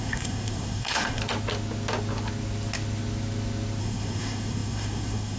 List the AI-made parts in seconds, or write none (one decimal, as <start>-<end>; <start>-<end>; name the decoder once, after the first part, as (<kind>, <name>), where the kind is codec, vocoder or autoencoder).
0.0-1.2 (codec, SNAC); 3.8-5.4